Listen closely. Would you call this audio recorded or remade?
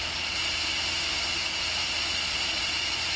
recorded